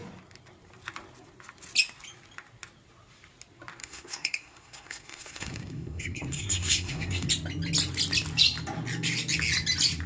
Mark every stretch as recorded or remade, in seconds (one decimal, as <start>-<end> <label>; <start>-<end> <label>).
0.0-3.8 recorded; 3.8-7.3 remade; 7.3-10.1 recorded